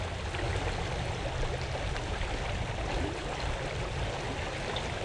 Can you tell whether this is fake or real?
real